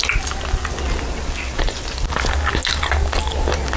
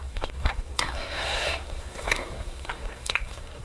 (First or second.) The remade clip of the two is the second